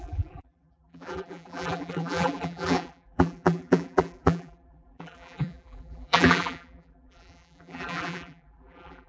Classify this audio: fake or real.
fake